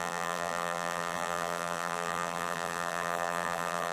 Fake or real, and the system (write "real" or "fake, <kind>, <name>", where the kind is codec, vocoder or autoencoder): fake, vocoder, BigVGAN v2